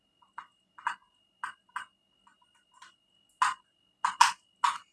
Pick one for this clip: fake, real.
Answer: real